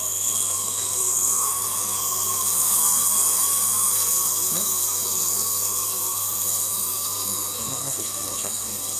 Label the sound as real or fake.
fake